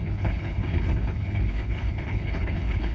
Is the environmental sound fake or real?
fake